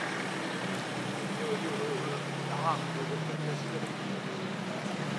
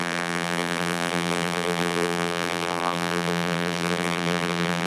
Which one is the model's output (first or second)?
second